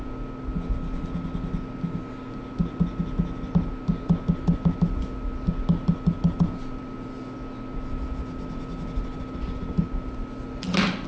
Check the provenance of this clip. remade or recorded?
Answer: recorded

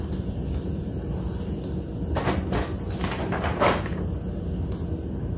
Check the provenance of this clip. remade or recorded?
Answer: recorded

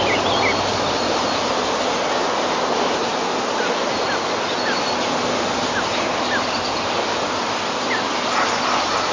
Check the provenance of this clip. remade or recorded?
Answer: recorded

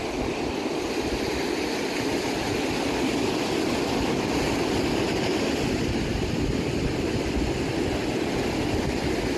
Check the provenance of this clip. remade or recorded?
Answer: recorded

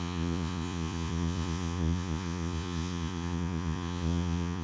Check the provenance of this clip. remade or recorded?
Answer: remade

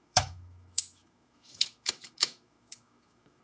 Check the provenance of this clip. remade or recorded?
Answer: remade